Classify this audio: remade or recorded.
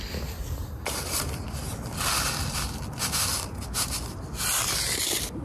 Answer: recorded